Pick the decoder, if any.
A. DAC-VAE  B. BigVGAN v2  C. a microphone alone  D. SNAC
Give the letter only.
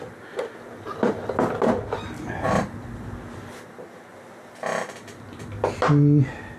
C